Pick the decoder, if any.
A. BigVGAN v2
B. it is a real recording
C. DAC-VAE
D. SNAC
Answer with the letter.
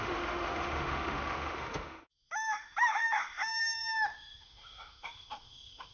C